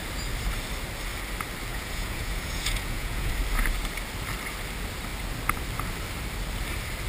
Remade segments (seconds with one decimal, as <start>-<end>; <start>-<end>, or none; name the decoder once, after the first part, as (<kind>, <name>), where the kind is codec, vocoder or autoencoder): 1.7-3.3 (vocoder, Vocos)

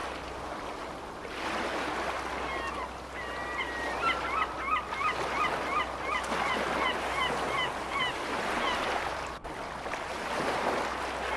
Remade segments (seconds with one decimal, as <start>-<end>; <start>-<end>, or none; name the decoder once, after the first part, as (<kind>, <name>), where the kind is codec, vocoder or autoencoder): none

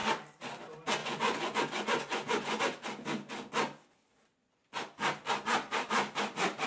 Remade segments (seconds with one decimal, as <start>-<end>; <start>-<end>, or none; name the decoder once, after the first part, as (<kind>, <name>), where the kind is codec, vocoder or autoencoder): 1.0-2.6 (vocoder, Vocos); 4.3-4.8

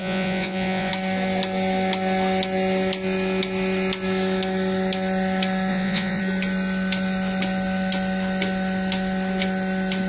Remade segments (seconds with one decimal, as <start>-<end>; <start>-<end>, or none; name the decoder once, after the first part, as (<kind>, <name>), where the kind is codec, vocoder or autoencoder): 0.0-0.9 (vocoder, Vocos); 5.7-6.2

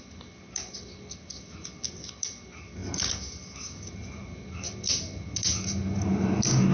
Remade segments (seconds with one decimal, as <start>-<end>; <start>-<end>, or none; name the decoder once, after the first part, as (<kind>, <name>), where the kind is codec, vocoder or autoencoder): none

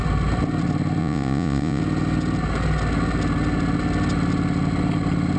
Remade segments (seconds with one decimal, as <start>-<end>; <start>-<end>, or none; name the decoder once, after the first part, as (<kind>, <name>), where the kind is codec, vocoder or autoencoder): 1.0-1.8 (vocoder, Vocos)